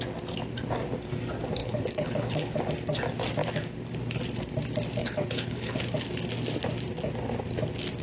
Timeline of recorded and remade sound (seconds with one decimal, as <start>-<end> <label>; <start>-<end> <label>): 0.0-1.6 recorded; 1.6-2.6 remade; 2.6-5.0 recorded; 5.0-5.8 remade; 5.8-8.0 recorded